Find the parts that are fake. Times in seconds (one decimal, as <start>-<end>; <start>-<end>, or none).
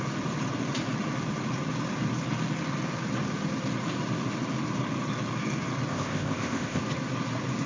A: 5.9-6.8